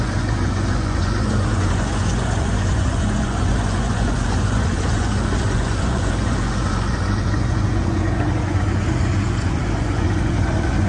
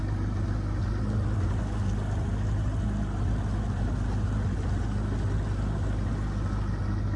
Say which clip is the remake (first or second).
first